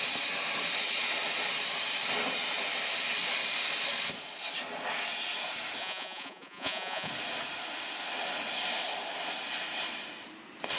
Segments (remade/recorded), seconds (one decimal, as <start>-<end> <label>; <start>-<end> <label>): 0.0-5.8 recorded; 5.8-7.1 remade; 7.1-10.8 recorded